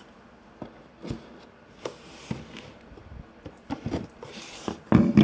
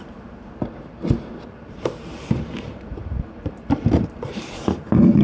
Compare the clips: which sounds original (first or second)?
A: first